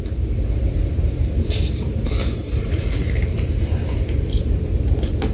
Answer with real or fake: fake